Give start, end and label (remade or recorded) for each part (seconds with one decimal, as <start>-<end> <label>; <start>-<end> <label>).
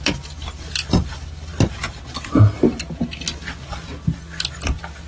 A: 0.0-1.5 remade; 1.5-4.6 recorded; 4.6-5.1 remade